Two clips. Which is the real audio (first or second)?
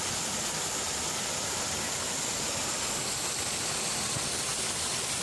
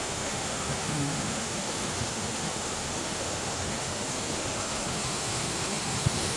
first